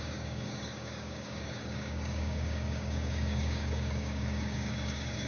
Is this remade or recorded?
remade